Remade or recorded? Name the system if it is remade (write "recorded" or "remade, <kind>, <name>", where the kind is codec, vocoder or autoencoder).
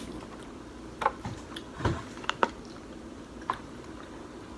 remade, vocoder, BigVGAN v2